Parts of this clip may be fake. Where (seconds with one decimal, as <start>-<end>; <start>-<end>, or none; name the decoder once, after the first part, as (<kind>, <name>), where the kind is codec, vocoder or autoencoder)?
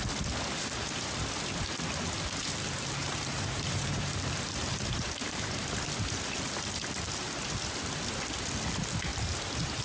3.0-5.6 (vocoder, BigVGAN v2); 9.1-9.8